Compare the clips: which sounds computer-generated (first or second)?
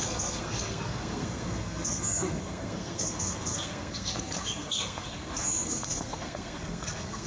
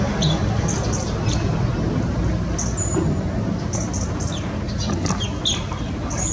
first